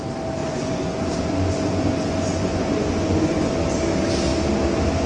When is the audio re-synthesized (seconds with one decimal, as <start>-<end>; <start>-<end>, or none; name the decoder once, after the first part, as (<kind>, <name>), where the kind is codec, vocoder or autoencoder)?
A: 0.4-3.5 (vocoder, Vocos)